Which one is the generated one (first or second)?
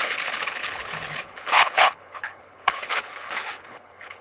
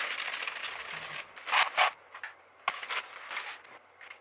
first